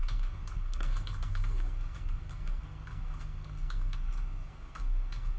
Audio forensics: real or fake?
fake